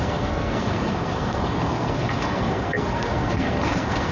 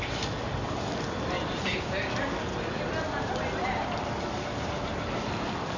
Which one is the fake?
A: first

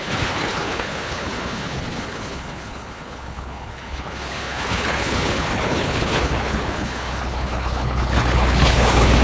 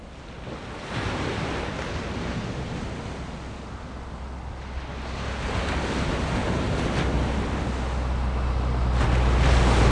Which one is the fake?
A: first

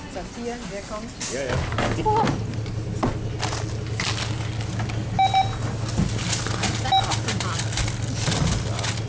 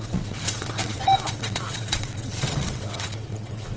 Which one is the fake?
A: second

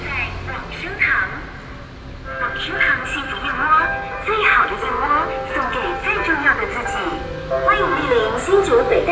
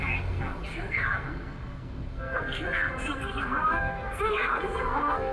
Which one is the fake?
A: second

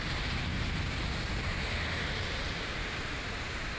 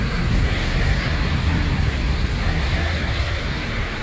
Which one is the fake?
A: second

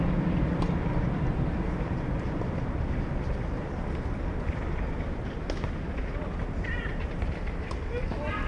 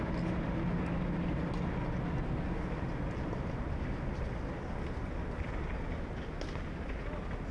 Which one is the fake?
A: first